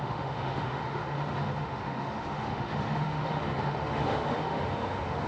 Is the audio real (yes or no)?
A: no